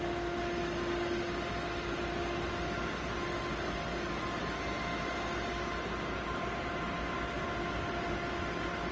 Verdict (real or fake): real